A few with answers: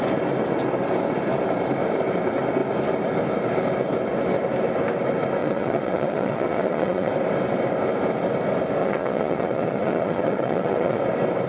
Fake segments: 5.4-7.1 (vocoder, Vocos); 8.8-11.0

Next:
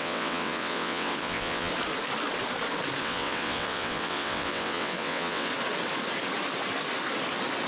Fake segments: 0.0-1.7 (vocoder, WaveNeXt); 3.0-5.5

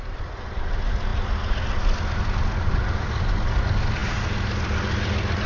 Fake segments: none

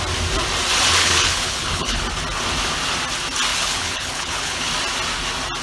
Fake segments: 1.0-2.0 (codec, HILCodec); 3.5-4.7

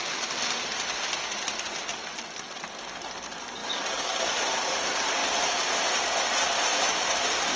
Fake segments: 1.9-2.6 (vocoder, BigVGAN v2)

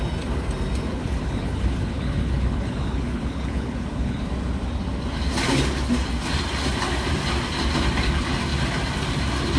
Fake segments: 0.9-4.2 (codec, HILCodec)

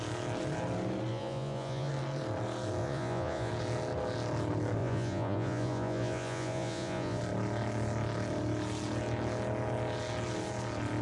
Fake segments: 1.1-1.9 (vocoder, Vocos); 2.8-3.5; 4.8-7.2

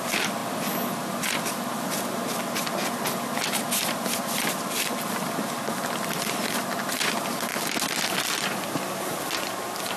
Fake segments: none